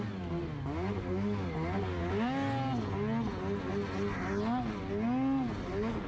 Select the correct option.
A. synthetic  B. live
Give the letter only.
B